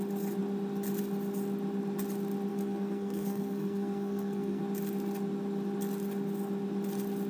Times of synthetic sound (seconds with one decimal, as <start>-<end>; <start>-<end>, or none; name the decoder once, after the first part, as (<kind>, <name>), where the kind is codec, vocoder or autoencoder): 2.5-4.6 (codec, SNAC)